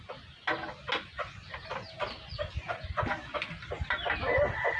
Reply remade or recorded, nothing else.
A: recorded